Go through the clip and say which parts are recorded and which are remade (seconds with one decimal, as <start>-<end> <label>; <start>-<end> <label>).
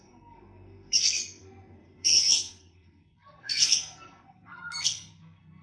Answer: 0.0-5.6 remade